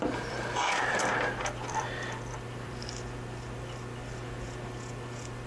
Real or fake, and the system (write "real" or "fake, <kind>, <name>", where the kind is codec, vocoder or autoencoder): fake, vocoder, BigVGAN v2